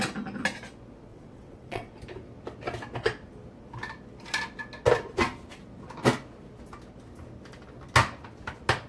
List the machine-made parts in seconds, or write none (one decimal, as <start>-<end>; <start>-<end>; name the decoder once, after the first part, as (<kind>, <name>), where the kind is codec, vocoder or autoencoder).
1.1-1.9 (vocoder, WaveNeXt)